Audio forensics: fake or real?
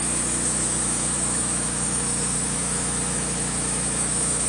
fake